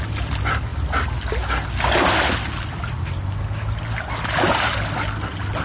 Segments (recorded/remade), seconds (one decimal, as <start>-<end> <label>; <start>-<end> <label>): 0.0-5.6 recorded